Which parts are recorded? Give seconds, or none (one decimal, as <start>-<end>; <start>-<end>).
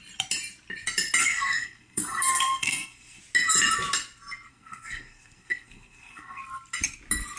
0.0-1.2; 3.2-4.5; 6.4-7.4